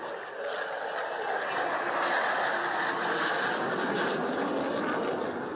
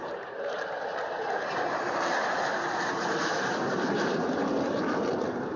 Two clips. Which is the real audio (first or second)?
first